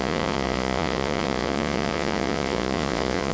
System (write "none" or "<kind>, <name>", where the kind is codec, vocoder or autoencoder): vocoder, Vocos